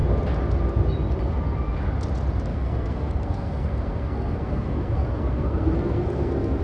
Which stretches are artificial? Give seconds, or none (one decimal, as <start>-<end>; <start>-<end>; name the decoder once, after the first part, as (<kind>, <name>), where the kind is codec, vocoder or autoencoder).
2.5-6.6 (codec, SNAC)